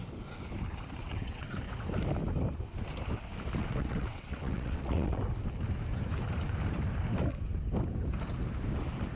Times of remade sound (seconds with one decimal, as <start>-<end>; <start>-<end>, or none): 1.0-1.6; 3.6-5.2